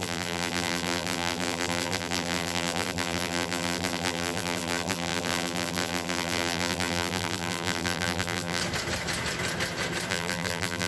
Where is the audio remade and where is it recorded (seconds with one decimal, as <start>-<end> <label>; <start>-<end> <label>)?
0.0-8.6 remade; 8.6-10.1 recorded; 10.1-10.9 remade